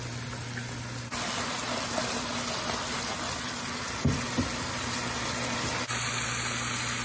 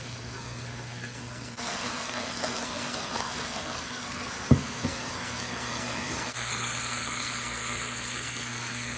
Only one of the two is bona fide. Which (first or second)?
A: first